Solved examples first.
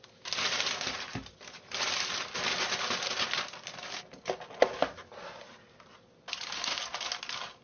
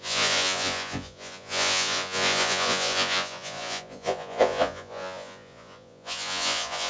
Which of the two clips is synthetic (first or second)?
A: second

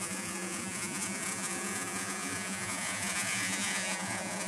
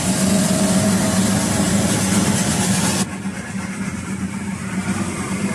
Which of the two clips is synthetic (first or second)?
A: first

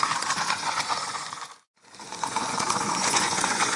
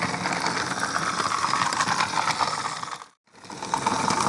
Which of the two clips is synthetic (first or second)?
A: first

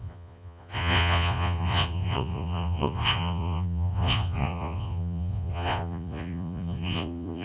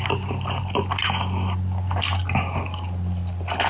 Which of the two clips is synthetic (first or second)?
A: first